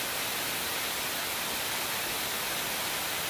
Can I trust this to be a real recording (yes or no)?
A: yes